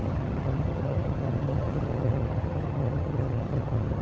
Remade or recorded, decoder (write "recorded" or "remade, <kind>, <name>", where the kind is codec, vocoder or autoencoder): remade, vocoder, HiFi-GAN